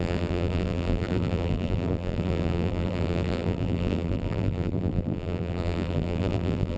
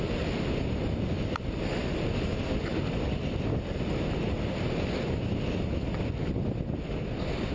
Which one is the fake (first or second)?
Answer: first